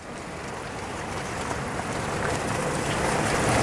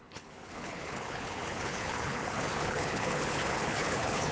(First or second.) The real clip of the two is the first